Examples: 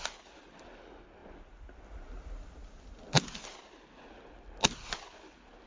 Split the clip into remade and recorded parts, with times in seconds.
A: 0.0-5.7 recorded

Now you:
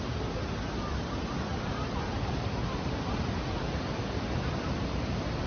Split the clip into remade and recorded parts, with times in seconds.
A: 0.0-5.5 recorded

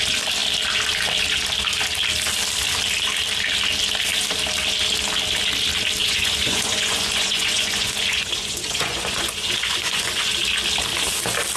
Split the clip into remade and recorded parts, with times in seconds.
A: 0.0-6.0 recorded; 6.0-10.3 remade; 10.3-11.6 recorded

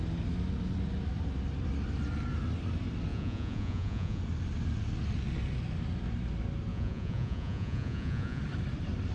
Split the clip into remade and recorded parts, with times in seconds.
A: 0.0-3.1 recorded; 3.1-4.2 remade; 4.2-6.7 recorded; 6.7-8.4 remade; 8.4-9.1 recorded